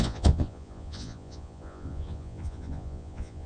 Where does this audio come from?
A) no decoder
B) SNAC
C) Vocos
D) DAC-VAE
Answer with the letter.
C